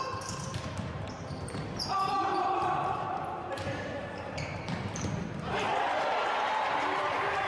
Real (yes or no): no